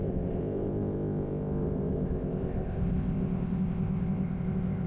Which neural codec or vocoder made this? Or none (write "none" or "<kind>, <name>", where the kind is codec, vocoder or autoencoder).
codec, ZipCodec